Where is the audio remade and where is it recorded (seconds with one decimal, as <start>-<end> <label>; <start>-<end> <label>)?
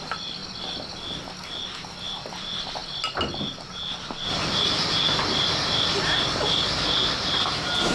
0.0-0.4 remade; 0.4-2.0 recorded; 2.0-2.8 remade; 2.8-6.8 recorded; 6.8-7.9 remade